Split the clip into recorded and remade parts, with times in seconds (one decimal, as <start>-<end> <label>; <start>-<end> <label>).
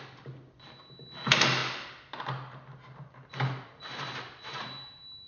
0.0-5.3 recorded